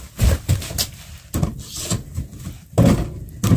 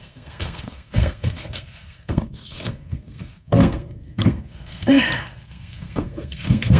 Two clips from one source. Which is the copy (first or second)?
second